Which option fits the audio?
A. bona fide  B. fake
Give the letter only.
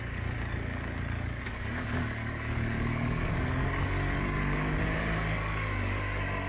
B